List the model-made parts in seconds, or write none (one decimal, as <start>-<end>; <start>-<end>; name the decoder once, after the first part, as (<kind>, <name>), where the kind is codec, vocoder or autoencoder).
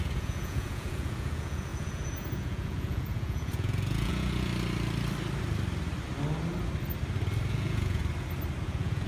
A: 0.0-4.5 (vocoder, Vocos); 7.5-8.0; 8.6-9.1